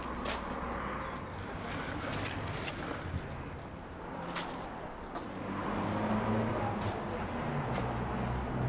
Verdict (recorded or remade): recorded